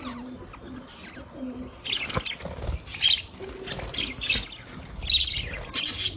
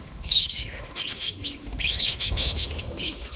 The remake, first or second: second